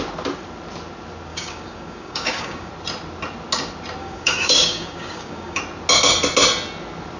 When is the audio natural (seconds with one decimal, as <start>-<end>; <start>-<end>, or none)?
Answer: 0.0-1.3; 2.7-4.0; 5.6-7.2